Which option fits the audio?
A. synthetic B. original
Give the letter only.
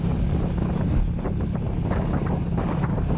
B